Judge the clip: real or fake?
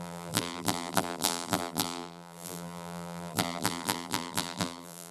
fake